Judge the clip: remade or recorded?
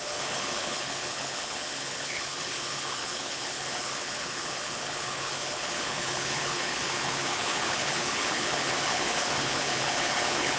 remade